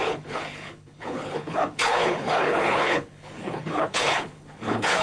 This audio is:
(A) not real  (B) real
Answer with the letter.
A